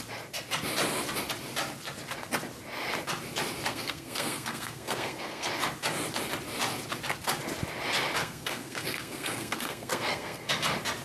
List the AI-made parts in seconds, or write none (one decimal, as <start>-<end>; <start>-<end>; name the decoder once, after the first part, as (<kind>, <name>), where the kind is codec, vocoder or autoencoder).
3.7-5.5 (codec, SNAC); 8.2-10.5